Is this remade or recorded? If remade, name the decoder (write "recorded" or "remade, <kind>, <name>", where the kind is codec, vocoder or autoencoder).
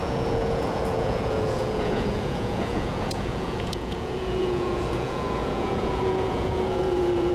remade, vocoder, Vocos